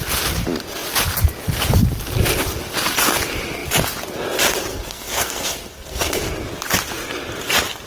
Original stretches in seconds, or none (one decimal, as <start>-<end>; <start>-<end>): 0.0-4.7; 6.2-7.9